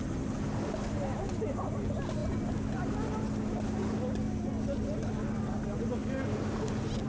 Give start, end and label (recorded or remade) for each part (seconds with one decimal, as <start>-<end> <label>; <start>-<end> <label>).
0.0-7.1 recorded